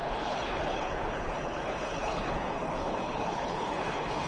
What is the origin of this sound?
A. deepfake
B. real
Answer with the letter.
A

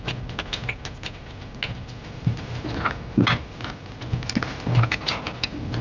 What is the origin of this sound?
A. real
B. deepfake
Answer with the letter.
A